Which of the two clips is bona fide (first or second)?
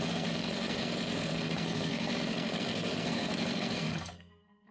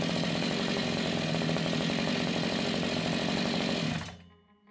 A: second